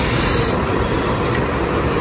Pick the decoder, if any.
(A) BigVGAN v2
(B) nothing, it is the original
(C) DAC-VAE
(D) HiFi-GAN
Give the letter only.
B